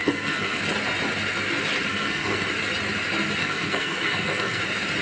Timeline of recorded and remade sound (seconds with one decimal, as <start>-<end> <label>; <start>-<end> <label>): 0.0-0.6 remade; 0.6-1.9 recorded; 1.9-2.5 remade; 2.5-3.4 recorded; 3.4-4.6 remade; 4.6-5.0 recorded

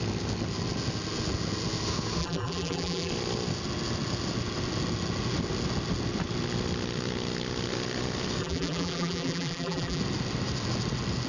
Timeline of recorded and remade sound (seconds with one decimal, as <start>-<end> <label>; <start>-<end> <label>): 0.0-2.2 recorded; 2.2-3.1 remade; 3.1-8.4 recorded; 8.4-10.0 remade; 10.0-11.3 recorded

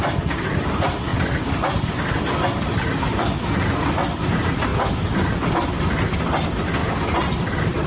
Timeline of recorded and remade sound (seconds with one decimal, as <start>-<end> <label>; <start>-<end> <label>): 0.0-0.7 remade; 0.7-1.1 recorded; 1.1-2.8 remade; 2.8-4.7 recorded; 4.7-5.5 remade; 5.5-6.8 recorded; 6.8-7.4 remade; 7.4-7.9 recorded

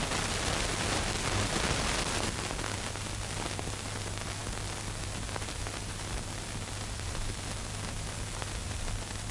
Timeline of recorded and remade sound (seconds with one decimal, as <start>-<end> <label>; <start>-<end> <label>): 0.0-9.3 recorded

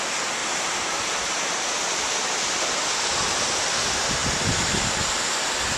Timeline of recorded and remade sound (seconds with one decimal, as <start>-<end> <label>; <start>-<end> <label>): 0.0-0.4 recorded; 0.4-1.8 remade; 1.8-5.8 recorded